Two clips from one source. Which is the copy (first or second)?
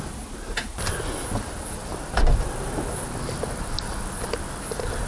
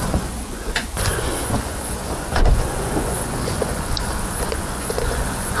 second